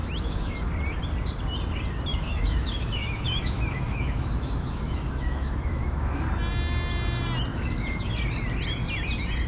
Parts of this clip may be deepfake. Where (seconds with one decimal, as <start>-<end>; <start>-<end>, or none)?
0.0-0.7; 2.1-6.2; 7.5-8.1